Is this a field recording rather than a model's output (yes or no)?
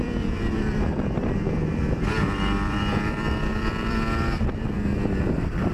no